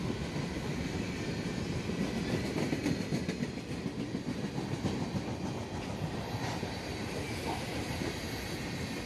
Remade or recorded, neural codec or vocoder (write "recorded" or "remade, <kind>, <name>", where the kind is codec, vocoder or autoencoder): recorded